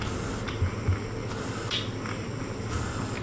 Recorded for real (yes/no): yes